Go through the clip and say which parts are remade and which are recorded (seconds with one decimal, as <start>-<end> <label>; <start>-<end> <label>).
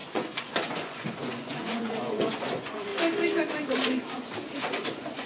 0.0-2.9 remade; 2.9-4.6 recorded; 4.6-5.3 remade